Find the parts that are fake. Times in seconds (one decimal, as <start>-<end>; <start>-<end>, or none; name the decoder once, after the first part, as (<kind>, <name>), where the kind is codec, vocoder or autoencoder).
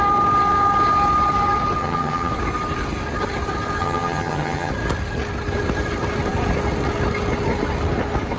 1.8-2.3 (vocoder, HiFi-GAN); 3.8-4.7